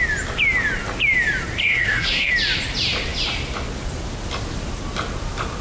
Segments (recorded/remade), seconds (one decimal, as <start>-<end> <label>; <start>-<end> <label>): 0.0-1.6 recorded; 1.6-2.3 remade; 2.3-5.6 recorded